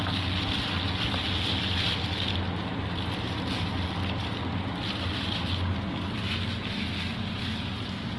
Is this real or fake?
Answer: real